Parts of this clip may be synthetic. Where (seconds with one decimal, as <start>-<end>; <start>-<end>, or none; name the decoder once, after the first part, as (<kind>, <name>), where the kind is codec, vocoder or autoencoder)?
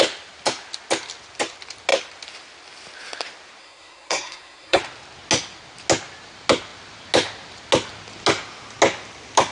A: 3.6-4.8 (codec, SNAC)